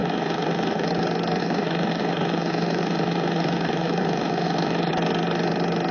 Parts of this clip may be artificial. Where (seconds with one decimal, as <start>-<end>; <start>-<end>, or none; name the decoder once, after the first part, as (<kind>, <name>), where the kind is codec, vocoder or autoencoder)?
0.0-0.9 (autoencoder, DAC-VAE); 1.4-4.9